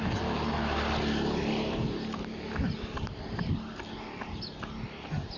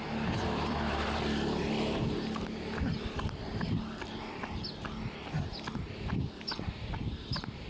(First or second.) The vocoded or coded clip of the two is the second